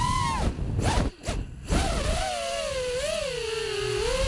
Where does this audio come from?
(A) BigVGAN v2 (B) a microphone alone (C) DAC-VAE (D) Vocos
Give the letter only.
B